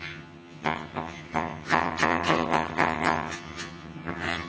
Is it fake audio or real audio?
fake